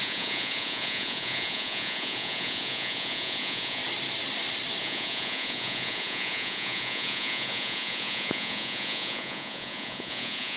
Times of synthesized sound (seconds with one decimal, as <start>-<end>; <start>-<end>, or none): 0.0-3.8; 4.8-10.6